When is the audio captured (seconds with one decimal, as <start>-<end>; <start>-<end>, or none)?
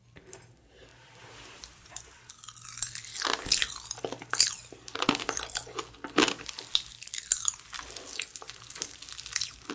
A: 0.0-0.9; 2.3-9.7